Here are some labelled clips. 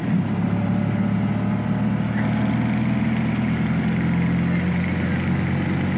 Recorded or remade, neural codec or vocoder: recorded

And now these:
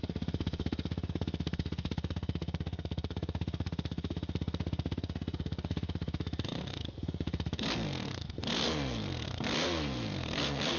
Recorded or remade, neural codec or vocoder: remade, codec, SNAC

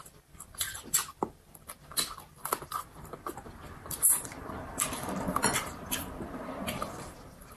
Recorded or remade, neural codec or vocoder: remade, vocoder, BigVGAN v2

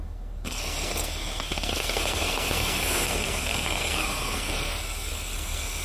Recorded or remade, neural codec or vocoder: remade, codec, SNAC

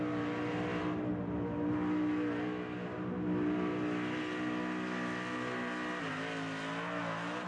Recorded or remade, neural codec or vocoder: recorded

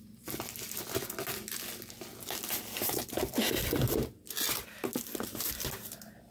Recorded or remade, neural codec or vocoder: recorded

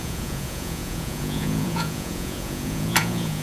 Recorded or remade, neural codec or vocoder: remade, vocoder, Vocos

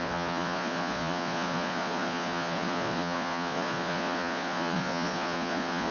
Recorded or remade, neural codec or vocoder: remade, vocoder, Vocos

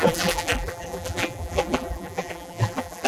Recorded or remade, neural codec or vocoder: remade, vocoder, BigVGAN v2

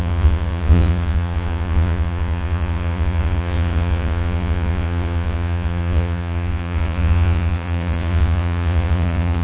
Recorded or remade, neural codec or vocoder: remade, vocoder, Vocos